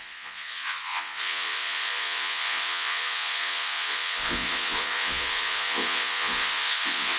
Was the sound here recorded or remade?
remade